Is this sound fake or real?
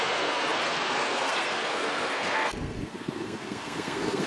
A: fake